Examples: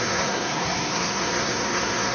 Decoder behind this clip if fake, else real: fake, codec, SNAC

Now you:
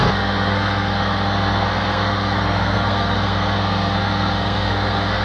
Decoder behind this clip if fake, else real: fake, codec, SNAC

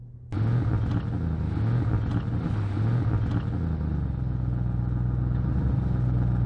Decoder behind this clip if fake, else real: real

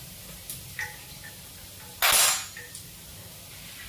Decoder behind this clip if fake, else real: real